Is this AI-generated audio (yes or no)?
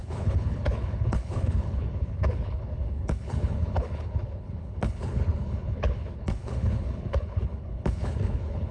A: yes